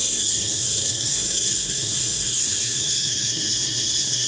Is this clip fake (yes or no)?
yes